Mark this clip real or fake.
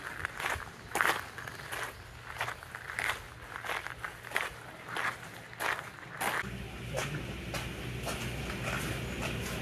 real